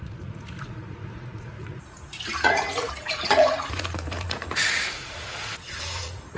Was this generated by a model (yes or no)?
yes